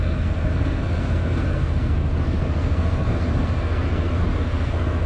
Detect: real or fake fake